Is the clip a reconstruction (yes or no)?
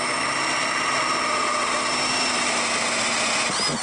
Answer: no